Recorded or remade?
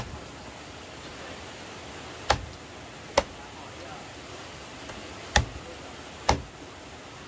recorded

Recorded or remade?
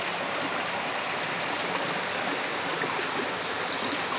recorded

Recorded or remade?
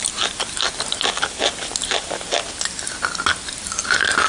recorded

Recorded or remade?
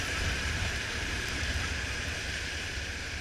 remade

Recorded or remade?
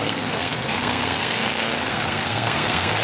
remade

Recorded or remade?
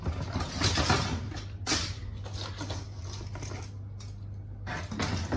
recorded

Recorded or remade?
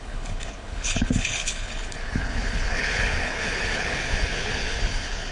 remade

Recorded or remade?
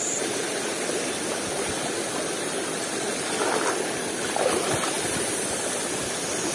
recorded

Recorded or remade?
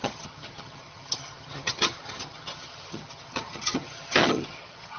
remade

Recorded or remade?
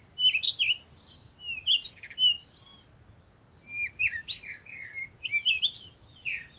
recorded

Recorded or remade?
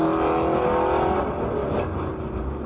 recorded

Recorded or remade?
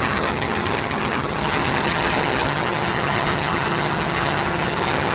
remade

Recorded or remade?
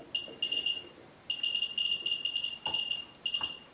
recorded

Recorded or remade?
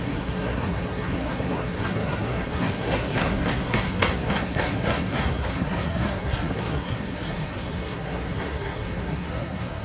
remade